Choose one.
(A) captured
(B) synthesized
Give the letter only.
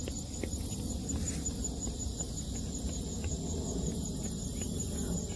A